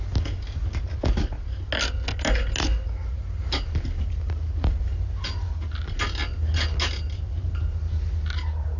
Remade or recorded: recorded